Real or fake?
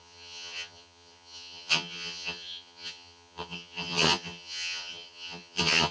fake